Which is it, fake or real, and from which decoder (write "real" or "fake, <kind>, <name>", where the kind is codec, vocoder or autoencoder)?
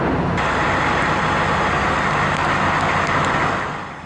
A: real